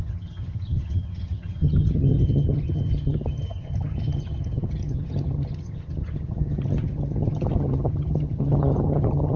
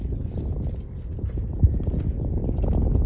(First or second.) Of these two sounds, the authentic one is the second